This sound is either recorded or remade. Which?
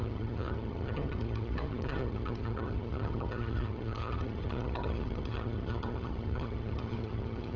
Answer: remade